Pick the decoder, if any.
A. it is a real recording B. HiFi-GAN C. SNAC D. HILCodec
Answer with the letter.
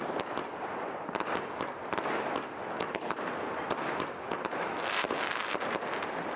A